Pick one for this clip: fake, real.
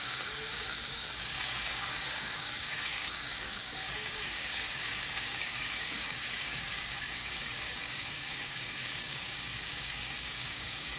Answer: fake